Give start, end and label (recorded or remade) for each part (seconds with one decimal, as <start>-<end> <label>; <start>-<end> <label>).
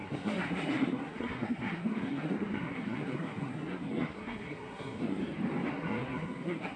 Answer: 0.0-5.2 remade; 5.2-5.7 recorded; 5.7-6.8 remade